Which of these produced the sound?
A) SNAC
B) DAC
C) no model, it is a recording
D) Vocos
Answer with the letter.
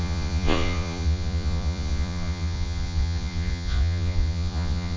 D